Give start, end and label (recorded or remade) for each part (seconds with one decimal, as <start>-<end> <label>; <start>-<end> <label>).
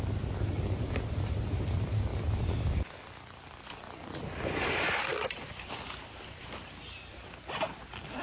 0.0-8.2 recorded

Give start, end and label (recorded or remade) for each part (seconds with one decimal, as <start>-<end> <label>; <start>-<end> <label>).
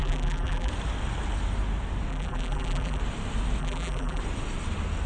0.0-0.7 remade; 0.7-2.1 recorded; 2.1-3.0 remade; 3.0-3.6 recorded; 3.6-4.2 remade; 4.2-5.1 recorded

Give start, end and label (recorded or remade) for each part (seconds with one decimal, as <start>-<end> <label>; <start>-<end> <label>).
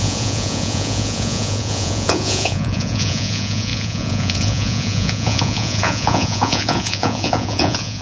0.0-8.0 remade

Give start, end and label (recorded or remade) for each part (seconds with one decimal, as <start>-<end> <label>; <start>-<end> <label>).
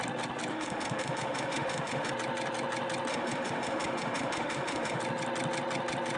0.0-0.5 recorded; 0.5-2.1 remade; 2.1-3.1 recorded; 3.1-5.0 remade; 5.0-6.2 recorded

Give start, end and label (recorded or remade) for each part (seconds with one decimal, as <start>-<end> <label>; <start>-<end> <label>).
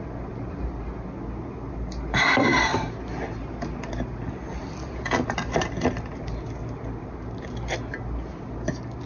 0.0-9.1 recorded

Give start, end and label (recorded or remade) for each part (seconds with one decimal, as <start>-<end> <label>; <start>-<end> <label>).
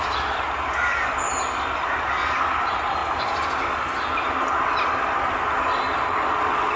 0.0-6.8 recorded